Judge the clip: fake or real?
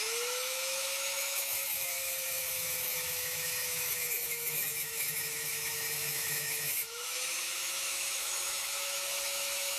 fake